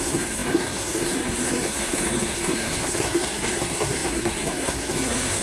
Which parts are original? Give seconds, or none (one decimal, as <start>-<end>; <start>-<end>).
none